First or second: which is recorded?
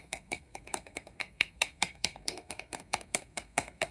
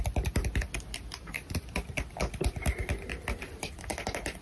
second